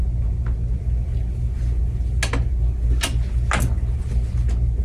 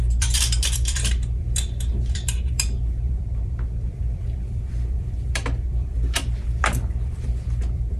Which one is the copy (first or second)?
second